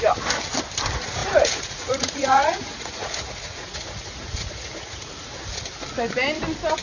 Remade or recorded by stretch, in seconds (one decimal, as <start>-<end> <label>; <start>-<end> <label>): 0.0-1.2 recorded; 1.2-5.3 remade; 5.3-6.8 recorded